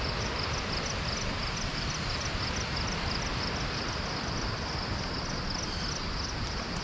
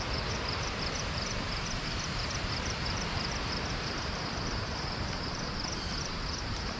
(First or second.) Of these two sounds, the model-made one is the second